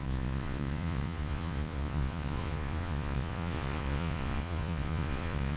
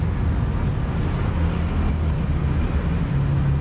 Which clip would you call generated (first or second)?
first